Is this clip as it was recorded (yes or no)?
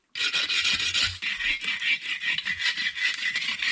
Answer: yes